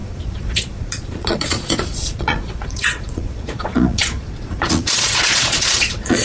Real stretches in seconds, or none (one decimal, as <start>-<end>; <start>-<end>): none